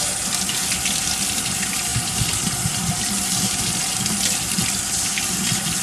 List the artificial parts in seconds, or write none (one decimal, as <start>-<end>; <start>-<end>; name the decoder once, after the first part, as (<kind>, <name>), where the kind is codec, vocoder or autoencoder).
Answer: none